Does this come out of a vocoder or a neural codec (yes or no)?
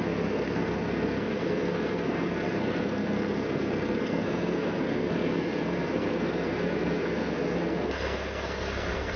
yes